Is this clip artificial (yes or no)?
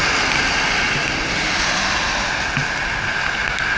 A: no